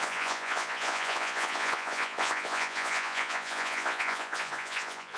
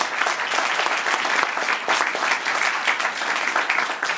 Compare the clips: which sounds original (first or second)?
second